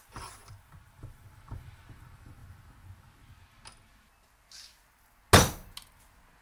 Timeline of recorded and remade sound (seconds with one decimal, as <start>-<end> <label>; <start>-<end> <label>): 0.0-2.4 remade; 2.4-6.4 recorded